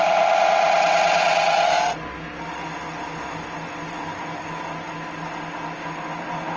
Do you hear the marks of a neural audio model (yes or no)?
no